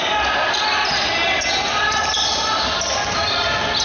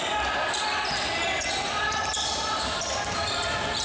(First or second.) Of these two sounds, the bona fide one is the first